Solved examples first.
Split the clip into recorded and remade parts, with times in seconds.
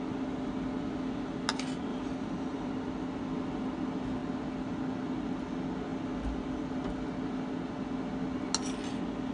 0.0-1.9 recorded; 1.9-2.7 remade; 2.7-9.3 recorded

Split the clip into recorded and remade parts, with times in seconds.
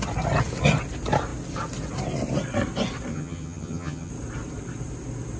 0.0-3.1 recorded; 3.1-4.1 remade; 4.1-5.4 recorded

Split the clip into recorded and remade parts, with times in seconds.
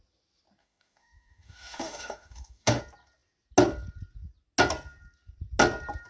0.0-0.6 recorded; 0.6-2.8 remade; 2.8-6.1 recorded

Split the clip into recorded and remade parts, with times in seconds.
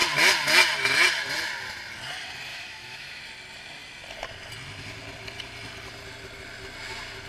0.0-2.5 recorded; 2.5-3.2 remade; 3.2-7.3 recorded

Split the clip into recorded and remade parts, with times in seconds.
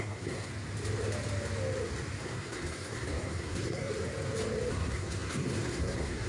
0.0-0.5 remade; 0.5-2.2 recorded; 2.2-3.9 remade; 3.9-4.7 recorded; 4.7-6.3 remade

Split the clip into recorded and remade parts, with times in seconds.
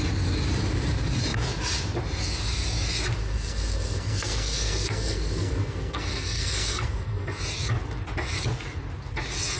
0.0-3.2 recorded; 3.2-7.4 remade; 7.4-9.6 recorded